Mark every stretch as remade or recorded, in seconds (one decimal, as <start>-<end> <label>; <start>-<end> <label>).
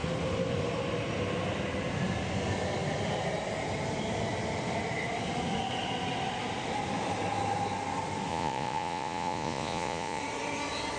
0.0-8.3 recorded; 8.3-10.2 remade; 10.2-11.0 recorded